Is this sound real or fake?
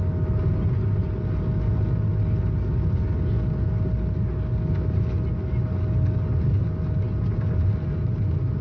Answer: real